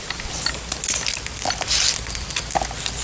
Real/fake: real